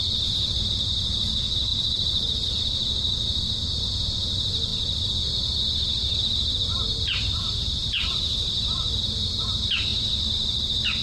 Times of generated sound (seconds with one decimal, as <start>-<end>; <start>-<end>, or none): 1.7-2.5